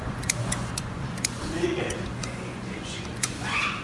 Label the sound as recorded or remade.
remade